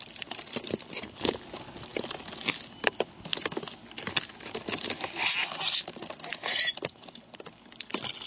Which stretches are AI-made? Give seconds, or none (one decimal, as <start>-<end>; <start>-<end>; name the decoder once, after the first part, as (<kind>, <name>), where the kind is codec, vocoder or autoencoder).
none